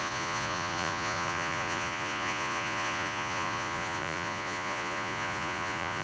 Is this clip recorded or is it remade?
remade